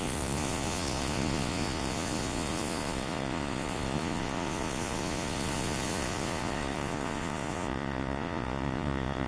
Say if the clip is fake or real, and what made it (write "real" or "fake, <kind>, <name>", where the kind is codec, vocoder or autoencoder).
fake, vocoder, Vocos